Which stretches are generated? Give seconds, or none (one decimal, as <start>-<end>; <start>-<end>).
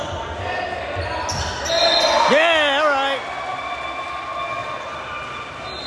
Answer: 4.6-5.1